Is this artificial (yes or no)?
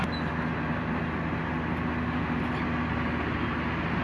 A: no